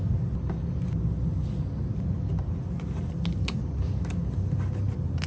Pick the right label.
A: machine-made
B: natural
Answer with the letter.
B